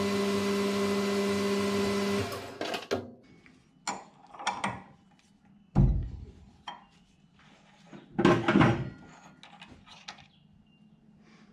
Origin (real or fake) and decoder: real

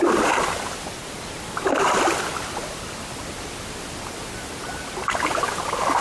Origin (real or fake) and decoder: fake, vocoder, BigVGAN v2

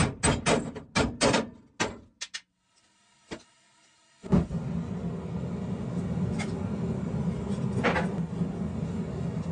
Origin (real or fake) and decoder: real